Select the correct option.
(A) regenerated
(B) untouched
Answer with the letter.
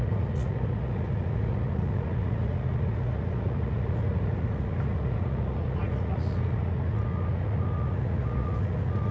A